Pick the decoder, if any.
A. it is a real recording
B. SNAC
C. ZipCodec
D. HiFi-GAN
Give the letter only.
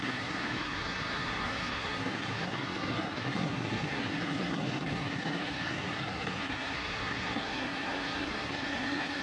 B